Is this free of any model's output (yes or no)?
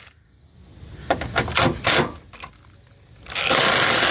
yes